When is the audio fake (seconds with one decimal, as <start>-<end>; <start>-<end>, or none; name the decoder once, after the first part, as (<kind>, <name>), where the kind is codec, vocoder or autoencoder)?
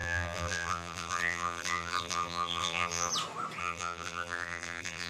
0.0-3.1 (vocoder, BigVGAN v2); 3.6-5.1